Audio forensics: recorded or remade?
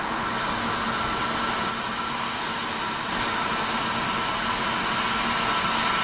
recorded